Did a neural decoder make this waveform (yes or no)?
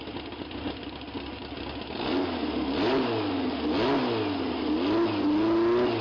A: no